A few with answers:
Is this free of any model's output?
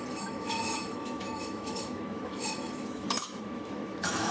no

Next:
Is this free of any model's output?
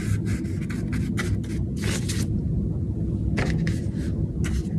yes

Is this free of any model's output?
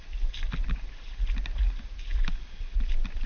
yes